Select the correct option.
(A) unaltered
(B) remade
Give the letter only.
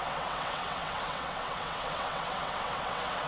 B